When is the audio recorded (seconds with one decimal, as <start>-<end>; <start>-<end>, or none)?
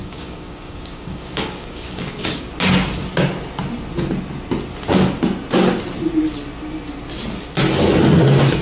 2.5-8.6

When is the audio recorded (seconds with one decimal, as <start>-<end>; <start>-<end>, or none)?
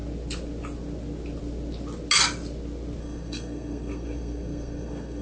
0.0-3.0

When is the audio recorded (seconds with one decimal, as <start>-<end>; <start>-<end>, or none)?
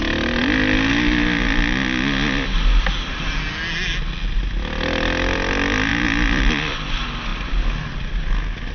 0.0-0.4; 0.9-5.9; 6.5-8.7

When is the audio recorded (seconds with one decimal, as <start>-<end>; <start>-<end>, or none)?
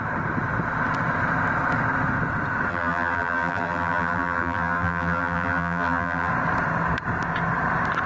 0.0-2.7; 6.3-8.1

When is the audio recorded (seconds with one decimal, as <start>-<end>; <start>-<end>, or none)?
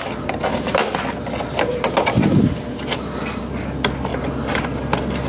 0.0-5.3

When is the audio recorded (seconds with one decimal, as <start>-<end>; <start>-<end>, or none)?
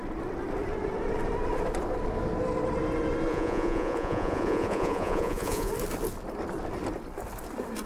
0.0-3.3; 5.7-7.9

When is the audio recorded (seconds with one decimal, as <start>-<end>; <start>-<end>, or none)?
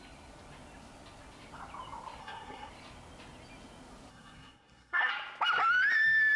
0.0-2.2; 2.7-4.1; 5.1-6.4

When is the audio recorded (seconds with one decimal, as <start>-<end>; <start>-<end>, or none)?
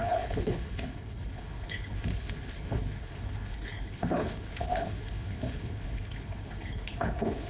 none